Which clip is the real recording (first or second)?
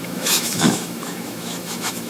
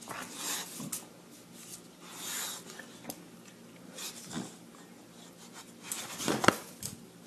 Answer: second